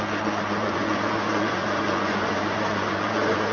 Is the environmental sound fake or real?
fake